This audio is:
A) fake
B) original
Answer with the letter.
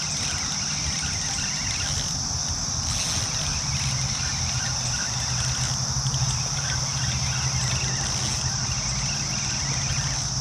B